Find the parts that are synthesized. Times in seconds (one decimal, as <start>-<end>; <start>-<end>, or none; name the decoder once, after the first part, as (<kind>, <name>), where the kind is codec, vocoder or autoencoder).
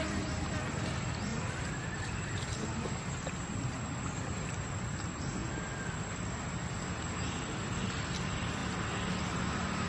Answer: 0.0-5.4 (vocoder, BigVGAN v2); 7.4-8.6; 9.4-9.9